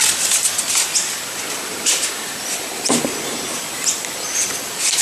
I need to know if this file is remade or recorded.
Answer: recorded